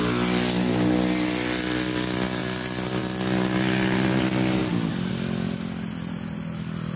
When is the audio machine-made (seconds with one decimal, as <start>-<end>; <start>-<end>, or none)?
none